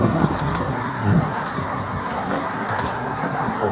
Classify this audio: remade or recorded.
remade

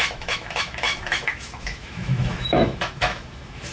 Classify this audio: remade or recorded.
remade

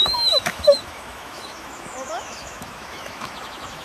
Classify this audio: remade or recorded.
remade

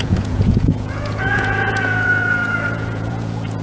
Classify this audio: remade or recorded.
remade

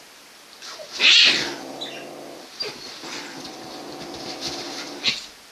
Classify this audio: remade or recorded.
recorded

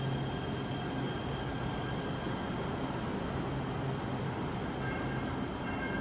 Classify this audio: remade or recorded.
recorded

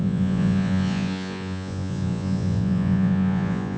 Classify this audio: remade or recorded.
remade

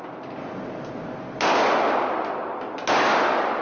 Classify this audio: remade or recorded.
recorded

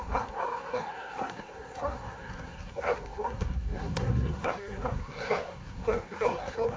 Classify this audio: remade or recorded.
remade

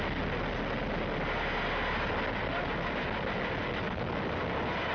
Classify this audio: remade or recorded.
recorded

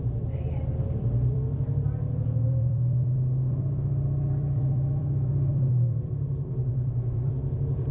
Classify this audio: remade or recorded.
remade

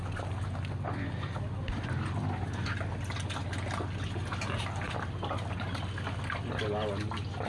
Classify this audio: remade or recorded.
recorded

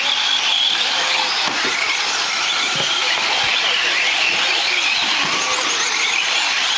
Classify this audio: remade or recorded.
recorded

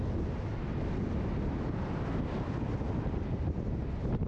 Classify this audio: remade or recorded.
recorded